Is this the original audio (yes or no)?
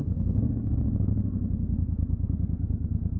no